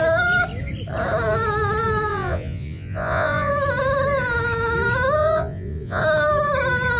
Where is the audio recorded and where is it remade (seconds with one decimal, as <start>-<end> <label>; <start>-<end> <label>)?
0.0-2.1 recorded; 2.1-3.5 remade; 3.5-5.2 recorded; 5.2-6.0 remade; 6.0-7.0 recorded